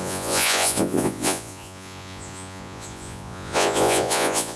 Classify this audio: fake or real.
fake